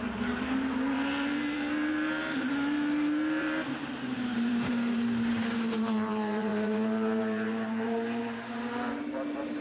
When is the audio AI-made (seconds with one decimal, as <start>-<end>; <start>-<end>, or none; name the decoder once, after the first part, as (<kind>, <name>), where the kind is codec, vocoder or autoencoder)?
0.0-9.6 (vocoder, BigVGAN v2)